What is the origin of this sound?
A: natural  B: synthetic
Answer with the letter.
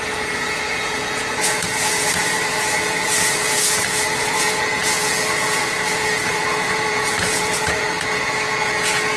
B